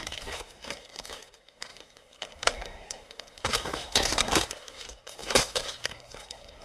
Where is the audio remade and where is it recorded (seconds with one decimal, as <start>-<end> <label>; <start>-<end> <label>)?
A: 0.0-6.6 remade